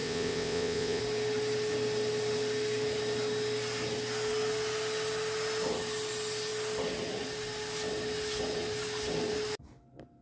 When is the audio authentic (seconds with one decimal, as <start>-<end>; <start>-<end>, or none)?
1.0-10.2